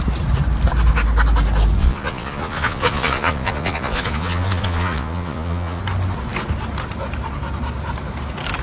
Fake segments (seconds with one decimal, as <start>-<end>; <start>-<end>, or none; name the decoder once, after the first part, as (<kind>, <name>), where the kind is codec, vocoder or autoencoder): 1.8-5.8 (vocoder, Vocos)